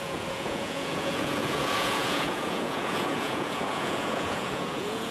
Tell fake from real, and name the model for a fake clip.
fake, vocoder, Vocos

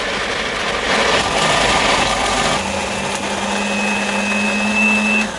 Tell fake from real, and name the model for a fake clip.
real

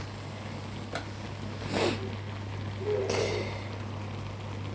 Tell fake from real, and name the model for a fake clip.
real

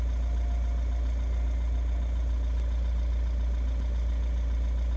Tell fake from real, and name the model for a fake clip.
real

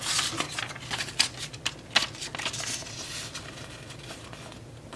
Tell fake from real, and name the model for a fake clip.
real